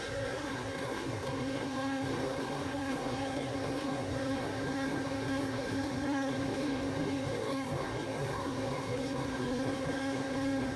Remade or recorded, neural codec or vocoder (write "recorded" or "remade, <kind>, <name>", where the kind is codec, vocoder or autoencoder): remade, codec, SNAC